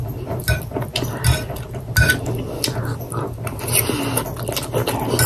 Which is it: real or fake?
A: real